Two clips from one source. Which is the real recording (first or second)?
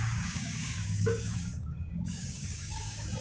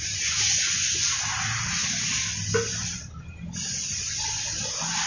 second